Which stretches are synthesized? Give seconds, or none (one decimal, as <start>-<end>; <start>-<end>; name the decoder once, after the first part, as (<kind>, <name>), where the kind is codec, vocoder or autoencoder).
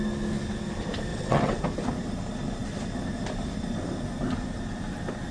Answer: 1.1-1.6 (vocoder, WaveNeXt)